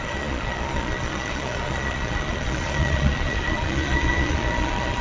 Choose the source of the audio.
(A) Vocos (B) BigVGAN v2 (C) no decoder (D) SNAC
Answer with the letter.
A